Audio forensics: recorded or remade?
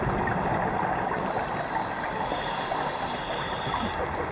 recorded